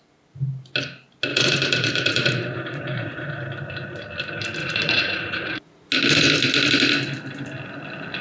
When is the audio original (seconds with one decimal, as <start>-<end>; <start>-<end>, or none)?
0.0-1.3; 3.4-4.6; 5.9-8.2

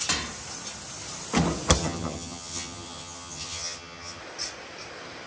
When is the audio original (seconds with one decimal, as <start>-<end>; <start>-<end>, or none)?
0.0-1.8; 4.2-5.3

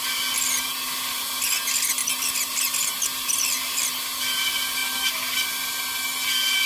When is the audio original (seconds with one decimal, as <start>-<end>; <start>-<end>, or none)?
0.0-6.7

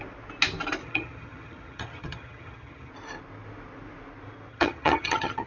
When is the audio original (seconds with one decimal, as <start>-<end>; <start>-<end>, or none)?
0.0-0.8; 2.9-4.5

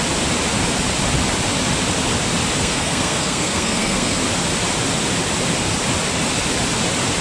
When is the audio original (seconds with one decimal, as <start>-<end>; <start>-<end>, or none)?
0.0-2.6; 4.2-7.2

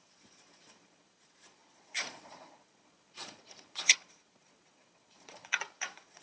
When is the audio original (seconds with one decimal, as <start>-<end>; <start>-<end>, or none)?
none